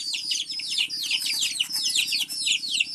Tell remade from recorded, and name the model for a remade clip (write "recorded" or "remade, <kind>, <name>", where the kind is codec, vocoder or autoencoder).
recorded